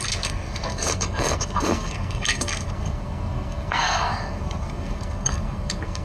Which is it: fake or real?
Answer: fake